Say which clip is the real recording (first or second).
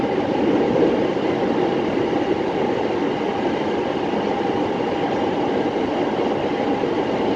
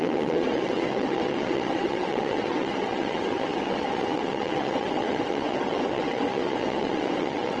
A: first